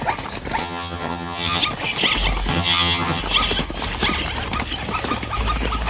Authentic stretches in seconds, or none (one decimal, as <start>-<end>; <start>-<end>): 0.0-0.6; 1.6-2.5; 3.2-5.9